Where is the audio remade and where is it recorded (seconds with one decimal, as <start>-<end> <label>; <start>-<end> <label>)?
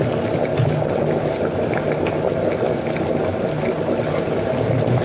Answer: 0.0-5.0 recorded